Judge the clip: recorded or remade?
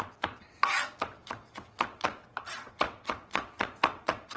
remade